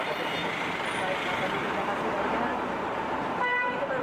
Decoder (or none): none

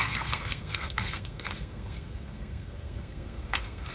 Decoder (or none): codec, SNAC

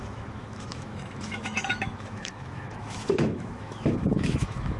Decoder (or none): autoencoder, DAC-VAE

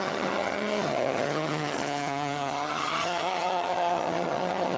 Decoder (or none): vocoder, HiFi-GAN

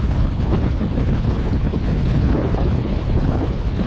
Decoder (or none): codec, HILCodec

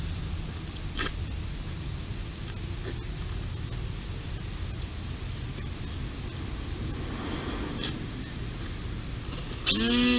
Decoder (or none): none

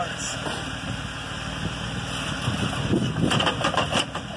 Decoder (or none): none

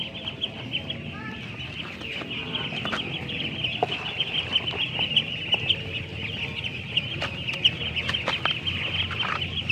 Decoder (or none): none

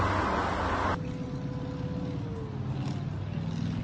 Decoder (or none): none